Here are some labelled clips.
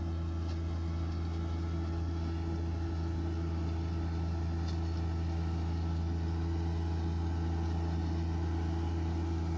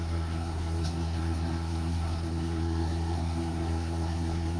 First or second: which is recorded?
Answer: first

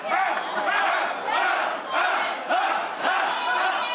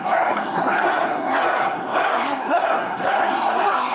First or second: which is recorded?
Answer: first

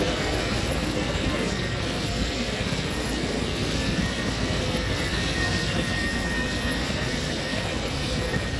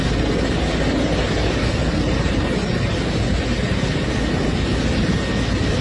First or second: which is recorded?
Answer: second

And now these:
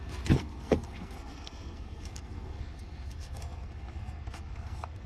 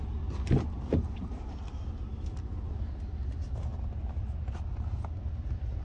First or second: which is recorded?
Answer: second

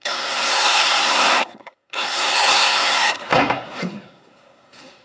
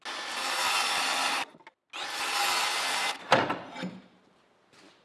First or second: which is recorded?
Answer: second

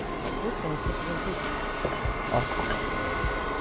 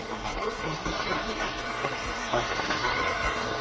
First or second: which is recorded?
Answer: first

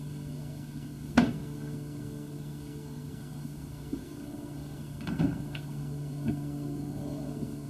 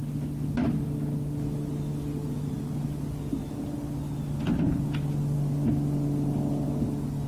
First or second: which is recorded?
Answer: second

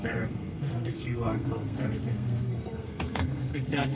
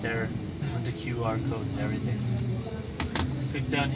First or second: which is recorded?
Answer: second